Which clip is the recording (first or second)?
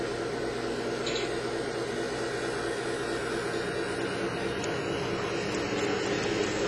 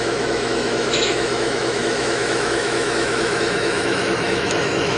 first